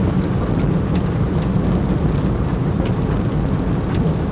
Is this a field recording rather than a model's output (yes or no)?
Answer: yes